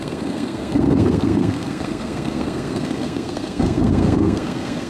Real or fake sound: fake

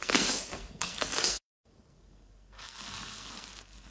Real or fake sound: fake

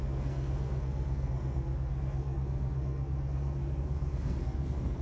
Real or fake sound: fake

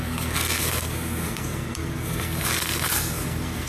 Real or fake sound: fake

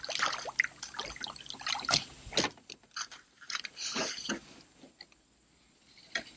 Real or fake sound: real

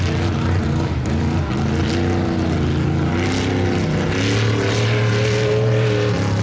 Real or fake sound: real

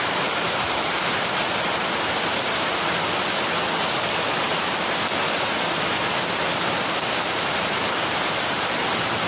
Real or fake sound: real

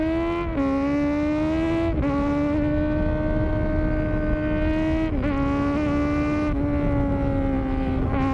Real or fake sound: real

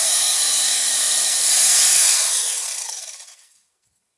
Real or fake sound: fake